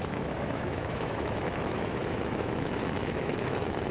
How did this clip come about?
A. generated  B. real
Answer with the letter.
A